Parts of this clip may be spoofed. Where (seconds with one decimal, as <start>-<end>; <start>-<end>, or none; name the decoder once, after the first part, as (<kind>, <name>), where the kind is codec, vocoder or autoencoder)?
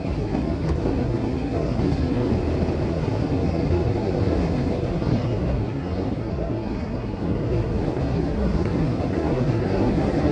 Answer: 0.0-2.3 (codec, SNAC); 2.9-10.3